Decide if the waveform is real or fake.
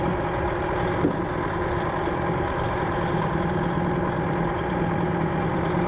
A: real